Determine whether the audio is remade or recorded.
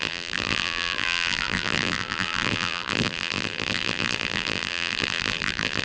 remade